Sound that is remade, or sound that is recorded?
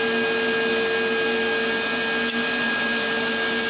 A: recorded